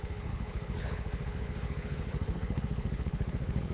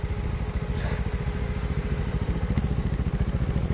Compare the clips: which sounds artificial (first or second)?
first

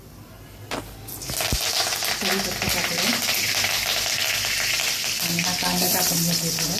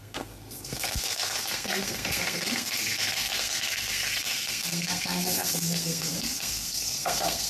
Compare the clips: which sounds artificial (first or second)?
second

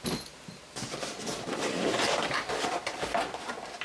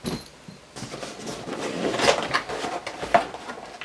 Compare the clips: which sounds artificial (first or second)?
first